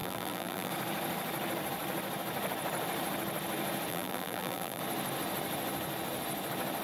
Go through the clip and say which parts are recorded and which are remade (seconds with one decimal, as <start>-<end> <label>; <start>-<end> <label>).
0.0-0.7 remade; 0.7-3.9 recorded; 3.9-4.8 remade; 4.8-6.8 recorded